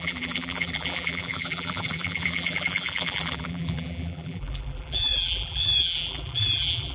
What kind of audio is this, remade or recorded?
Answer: remade